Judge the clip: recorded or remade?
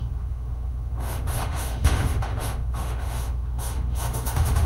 remade